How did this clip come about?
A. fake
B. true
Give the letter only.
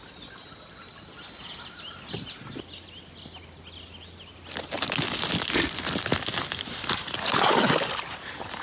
B